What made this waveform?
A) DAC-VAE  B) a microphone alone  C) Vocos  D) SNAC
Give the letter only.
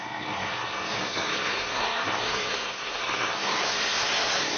D